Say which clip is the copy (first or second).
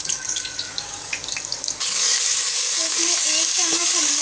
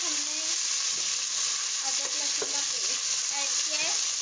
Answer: first